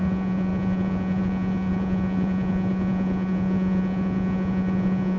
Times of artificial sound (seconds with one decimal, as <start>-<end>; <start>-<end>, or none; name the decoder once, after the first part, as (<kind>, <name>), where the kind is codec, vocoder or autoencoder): 0.0-5.2 (vocoder, Vocos)